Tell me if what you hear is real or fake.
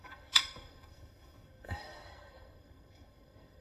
fake